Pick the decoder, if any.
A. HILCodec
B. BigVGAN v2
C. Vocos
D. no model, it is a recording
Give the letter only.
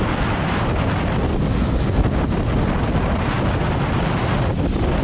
D